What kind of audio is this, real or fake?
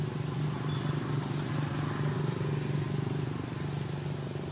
real